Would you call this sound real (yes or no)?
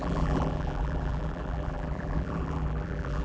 no